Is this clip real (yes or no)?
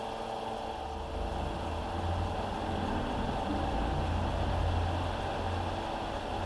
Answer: yes